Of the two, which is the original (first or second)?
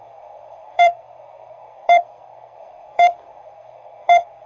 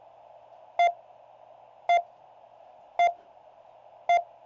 second